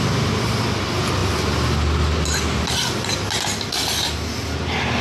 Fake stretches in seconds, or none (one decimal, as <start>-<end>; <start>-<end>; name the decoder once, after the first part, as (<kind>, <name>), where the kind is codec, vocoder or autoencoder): none